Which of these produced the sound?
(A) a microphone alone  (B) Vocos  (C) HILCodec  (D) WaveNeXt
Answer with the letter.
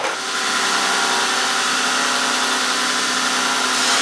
A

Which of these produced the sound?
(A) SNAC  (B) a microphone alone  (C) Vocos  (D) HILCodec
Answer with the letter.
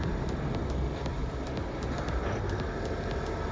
B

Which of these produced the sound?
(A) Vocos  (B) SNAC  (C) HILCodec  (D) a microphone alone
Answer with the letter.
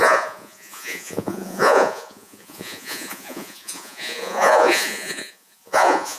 A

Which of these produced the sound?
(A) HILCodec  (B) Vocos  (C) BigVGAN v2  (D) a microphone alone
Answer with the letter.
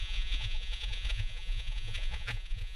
B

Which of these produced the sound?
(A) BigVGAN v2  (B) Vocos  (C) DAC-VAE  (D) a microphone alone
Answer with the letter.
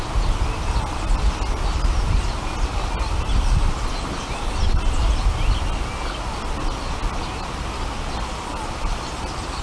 D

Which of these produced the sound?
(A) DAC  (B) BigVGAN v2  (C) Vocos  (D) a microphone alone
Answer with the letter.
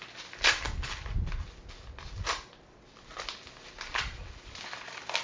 D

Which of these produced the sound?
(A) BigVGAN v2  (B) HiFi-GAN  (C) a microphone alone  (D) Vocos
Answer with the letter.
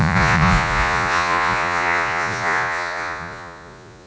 D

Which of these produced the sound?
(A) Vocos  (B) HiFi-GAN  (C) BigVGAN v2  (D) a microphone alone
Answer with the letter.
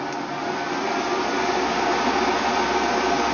D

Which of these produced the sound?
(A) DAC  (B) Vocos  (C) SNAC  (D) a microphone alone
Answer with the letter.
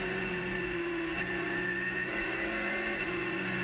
B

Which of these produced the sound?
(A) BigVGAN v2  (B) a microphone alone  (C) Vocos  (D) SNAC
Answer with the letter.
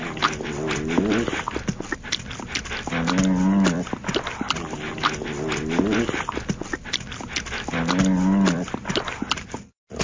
B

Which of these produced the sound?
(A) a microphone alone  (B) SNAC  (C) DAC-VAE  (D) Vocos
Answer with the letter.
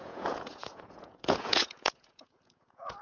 D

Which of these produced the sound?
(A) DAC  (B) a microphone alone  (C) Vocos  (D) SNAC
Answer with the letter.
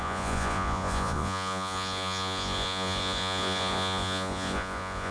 C